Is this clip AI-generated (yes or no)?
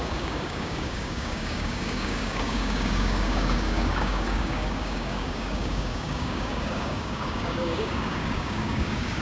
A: yes